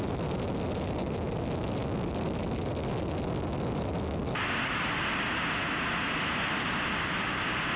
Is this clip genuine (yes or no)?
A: yes